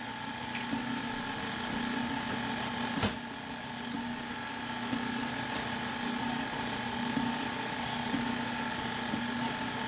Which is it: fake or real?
real